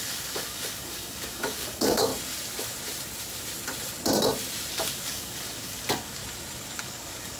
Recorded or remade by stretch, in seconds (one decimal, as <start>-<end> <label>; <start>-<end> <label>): 0.0-2.1 remade; 2.1-4.7 recorded; 4.7-6.2 remade; 6.2-6.8 recorded; 6.8-7.4 remade